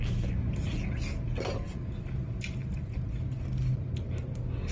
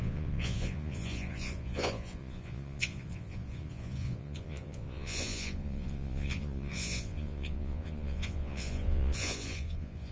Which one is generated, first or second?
second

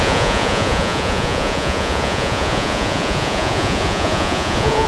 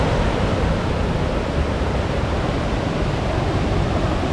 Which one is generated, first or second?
first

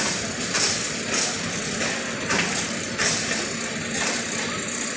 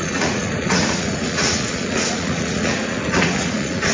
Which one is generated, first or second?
second